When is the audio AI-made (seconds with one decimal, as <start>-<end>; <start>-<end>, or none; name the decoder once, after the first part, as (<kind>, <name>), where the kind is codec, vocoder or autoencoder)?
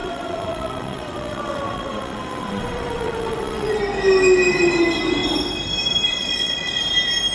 0.0-3.8 (vocoder, WaveNeXt); 6.2-6.8